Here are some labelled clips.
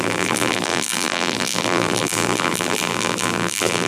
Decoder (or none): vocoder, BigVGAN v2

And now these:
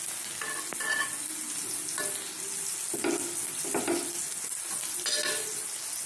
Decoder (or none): none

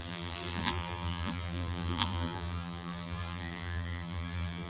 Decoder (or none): vocoder, BigVGAN v2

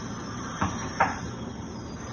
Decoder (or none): vocoder, BigVGAN v2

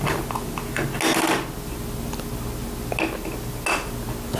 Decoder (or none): none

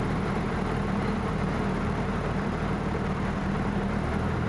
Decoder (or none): vocoder, BigVGAN v2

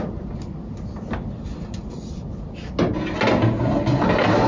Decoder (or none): none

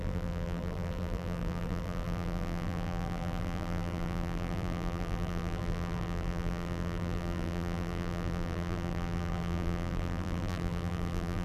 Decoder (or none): vocoder, BigVGAN v2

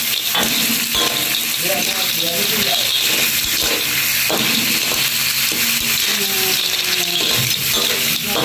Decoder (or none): none